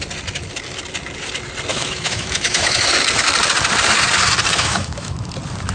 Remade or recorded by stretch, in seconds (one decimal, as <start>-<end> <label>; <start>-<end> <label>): 0.0-1.7 recorded; 1.7-2.8 remade; 2.8-4.5 recorded; 4.5-5.3 remade; 5.3-5.7 recorded